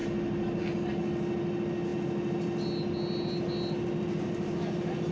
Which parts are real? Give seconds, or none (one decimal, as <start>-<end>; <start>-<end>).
0.0-5.1